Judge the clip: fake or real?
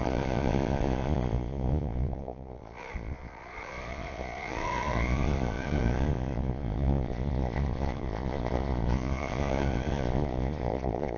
fake